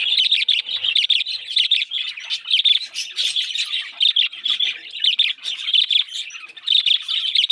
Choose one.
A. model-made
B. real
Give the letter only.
B